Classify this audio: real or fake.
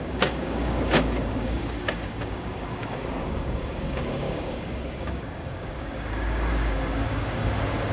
fake